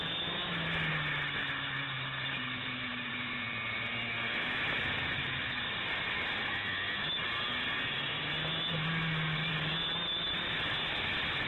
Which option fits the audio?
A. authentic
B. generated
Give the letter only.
A